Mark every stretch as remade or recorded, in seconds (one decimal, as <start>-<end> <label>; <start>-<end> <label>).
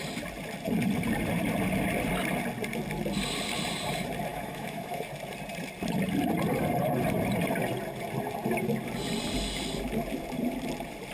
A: 0.0-4.3 recorded; 4.3-5.0 remade; 5.0-11.1 recorded